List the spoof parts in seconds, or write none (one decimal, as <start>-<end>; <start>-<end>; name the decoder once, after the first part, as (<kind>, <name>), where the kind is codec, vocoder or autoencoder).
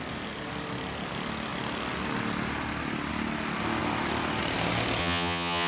5.0-5.7 (vocoder, HiFi-GAN)